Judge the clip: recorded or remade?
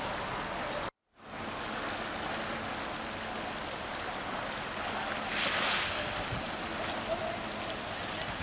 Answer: recorded